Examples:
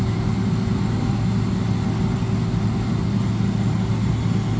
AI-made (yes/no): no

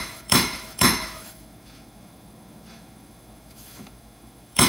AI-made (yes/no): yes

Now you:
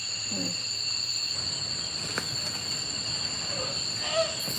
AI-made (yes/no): no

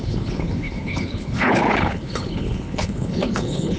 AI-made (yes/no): yes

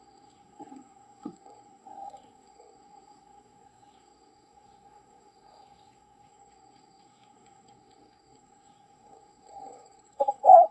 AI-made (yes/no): yes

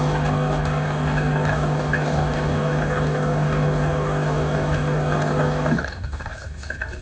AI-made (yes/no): yes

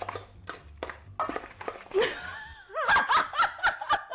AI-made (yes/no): no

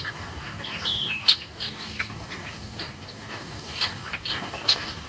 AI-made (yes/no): yes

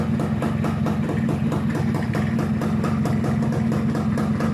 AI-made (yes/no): no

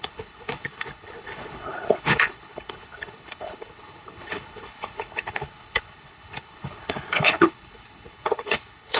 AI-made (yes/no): yes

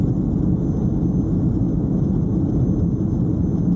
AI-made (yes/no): no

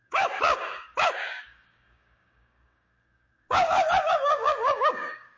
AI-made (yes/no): yes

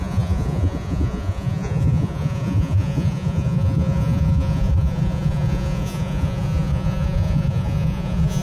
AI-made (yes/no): yes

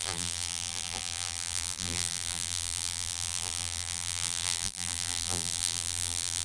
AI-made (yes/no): yes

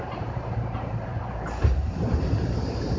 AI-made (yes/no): yes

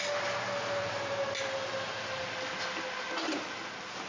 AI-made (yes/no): no